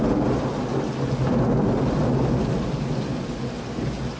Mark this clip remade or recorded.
recorded